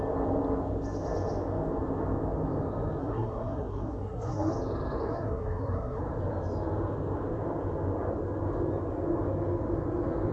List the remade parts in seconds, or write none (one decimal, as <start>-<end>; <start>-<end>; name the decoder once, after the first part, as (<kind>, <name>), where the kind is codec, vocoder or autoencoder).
3.0-4.5 (codec, SNAC); 5.1-6.0